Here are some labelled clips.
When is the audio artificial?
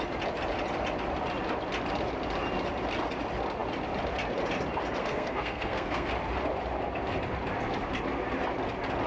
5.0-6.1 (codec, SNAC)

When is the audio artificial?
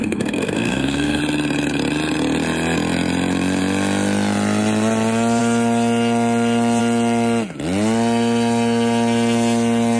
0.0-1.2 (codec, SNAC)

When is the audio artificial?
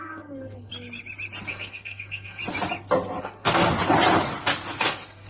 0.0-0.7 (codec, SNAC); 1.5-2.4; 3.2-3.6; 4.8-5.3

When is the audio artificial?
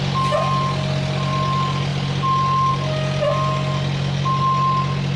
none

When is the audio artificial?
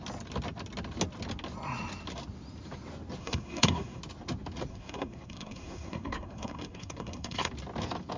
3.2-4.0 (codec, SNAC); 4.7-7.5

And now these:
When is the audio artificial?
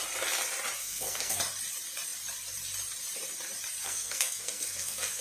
0.8-1.4 (codec, SNAC); 3.8-5.2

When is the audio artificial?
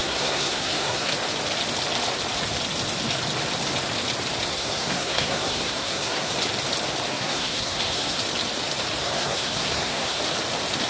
0.0-1.1 (codec, SNAC); 4.5-6.3; 7.1-8.2; 9.0-10.2